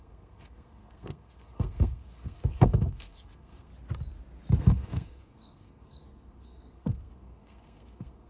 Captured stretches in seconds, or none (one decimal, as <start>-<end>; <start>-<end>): 3.7-4.6